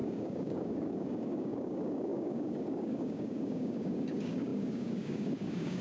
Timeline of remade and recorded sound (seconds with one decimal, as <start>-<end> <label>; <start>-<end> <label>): 0.0-5.8 remade